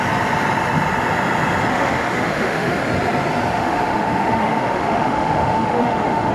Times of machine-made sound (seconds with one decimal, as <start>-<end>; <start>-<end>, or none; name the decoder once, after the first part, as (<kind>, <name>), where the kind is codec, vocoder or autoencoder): 1.7-2.8 (autoencoder, DAC-VAE); 3.5-6.3